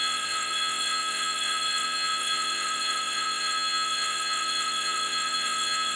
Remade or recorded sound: remade